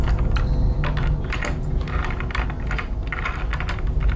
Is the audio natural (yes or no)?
yes